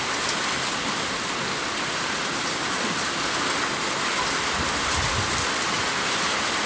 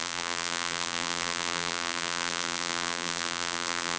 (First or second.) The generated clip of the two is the second